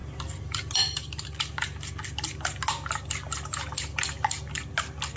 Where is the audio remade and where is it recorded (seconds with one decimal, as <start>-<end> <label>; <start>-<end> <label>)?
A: 0.0-5.2 recorded